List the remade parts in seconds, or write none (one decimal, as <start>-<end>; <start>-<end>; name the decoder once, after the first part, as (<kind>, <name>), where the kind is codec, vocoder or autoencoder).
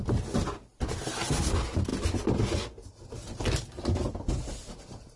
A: none